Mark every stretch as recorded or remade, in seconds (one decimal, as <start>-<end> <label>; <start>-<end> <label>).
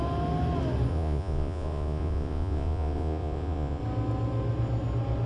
0.0-0.9 recorded; 0.9-3.8 remade; 3.8-5.3 recorded